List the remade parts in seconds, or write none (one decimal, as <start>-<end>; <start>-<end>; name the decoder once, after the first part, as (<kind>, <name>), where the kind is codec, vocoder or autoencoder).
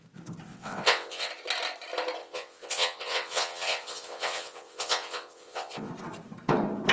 0.5-1.3 (vocoder, WaveNeXt); 2.2-5.9